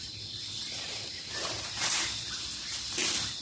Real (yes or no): yes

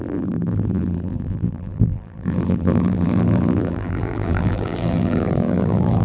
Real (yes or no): no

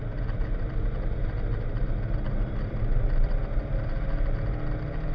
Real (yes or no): yes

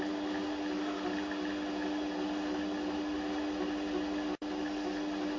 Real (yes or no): yes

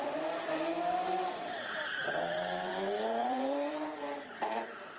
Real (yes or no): no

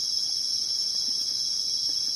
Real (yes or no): no